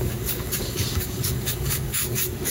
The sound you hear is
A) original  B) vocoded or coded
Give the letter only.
B